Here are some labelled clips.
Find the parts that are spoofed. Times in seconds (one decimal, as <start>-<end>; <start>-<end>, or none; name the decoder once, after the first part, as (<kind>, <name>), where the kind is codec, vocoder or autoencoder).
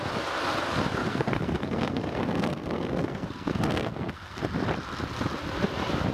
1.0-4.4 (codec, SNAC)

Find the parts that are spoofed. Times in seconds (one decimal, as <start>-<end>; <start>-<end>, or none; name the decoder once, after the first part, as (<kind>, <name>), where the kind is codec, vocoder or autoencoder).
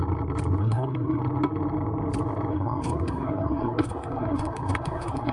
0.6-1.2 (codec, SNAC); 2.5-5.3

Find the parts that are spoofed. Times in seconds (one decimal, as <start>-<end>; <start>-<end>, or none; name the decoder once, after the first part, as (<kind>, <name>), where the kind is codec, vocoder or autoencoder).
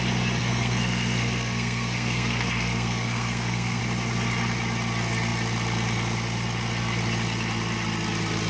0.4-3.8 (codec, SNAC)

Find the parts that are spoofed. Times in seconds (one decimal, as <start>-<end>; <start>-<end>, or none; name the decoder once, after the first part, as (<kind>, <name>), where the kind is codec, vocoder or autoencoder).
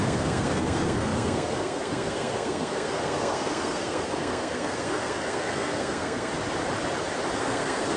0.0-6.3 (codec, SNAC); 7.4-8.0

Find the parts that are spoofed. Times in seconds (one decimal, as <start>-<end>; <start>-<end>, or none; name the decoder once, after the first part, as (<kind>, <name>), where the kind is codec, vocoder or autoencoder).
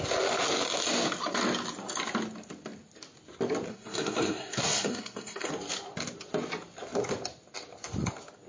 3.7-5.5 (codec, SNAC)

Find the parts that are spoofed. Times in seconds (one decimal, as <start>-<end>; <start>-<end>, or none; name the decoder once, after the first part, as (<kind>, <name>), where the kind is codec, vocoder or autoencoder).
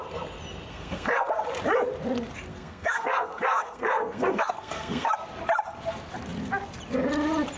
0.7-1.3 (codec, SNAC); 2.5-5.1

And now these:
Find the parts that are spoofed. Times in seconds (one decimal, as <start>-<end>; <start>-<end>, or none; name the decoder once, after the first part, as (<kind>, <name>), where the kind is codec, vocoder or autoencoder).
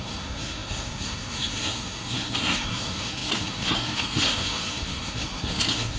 0.0-6.0 (codec, SNAC)